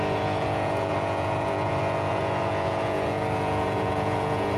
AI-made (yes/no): yes